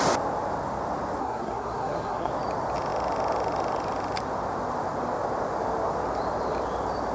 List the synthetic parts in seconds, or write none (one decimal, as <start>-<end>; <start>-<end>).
1.2-2.3